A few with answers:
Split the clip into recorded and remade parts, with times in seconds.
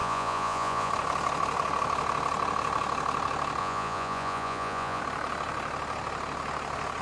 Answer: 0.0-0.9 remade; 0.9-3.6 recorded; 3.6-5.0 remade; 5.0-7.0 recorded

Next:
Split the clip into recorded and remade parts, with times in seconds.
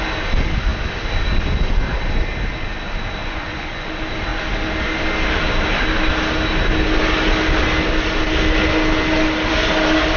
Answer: 0.0-3.2 recorded; 3.2-3.9 remade; 3.9-10.2 recorded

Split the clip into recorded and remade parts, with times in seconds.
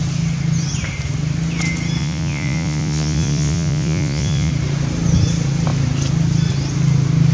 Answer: 0.0-2.0 recorded; 2.0-4.5 remade; 4.5-7.3 recorded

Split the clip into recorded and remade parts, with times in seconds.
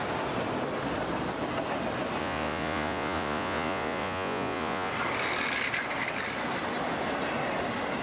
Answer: 0.0-2.2 recorded; 2.2-4.9 remade; 4.9-8.0 recorded